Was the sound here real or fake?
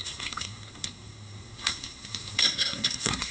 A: fake